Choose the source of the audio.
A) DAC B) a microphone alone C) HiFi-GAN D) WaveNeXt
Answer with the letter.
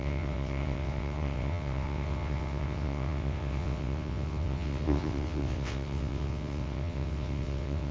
D